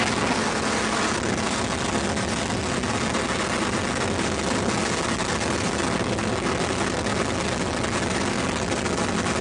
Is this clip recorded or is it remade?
recorded